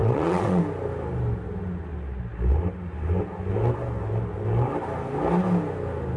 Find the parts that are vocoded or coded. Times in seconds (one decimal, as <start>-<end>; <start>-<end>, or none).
0.0-0.6